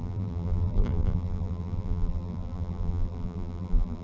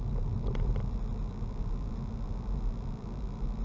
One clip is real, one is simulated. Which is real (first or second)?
second